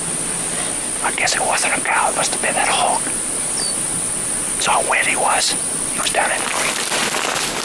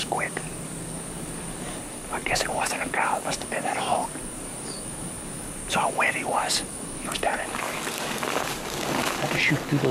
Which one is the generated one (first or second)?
second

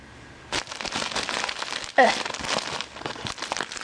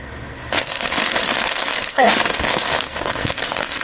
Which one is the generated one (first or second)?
second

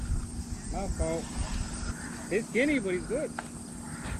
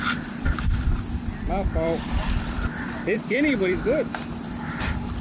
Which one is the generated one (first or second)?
second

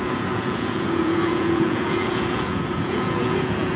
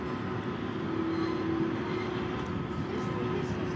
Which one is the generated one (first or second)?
first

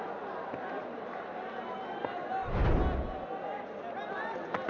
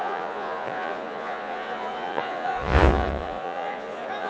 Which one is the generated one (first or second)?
second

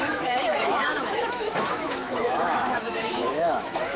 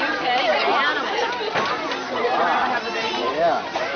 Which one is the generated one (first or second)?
first